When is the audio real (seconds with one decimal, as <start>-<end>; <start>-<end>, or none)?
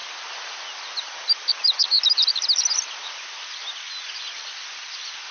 0.0-5.3